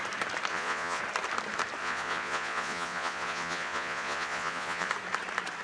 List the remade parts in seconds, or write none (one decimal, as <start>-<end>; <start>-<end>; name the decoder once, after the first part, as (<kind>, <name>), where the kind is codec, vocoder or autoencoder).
0.5-1.0 (vocoder, Vocos); 1.8-4.9